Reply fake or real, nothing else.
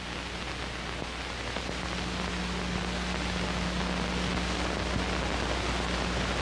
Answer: real